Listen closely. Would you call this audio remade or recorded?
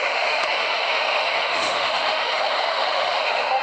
remade